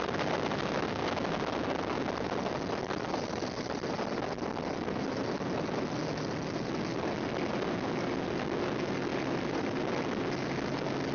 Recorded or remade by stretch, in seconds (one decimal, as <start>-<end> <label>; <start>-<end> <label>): 0.0-11.1 recorded